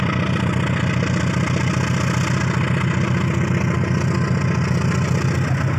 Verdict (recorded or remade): recorded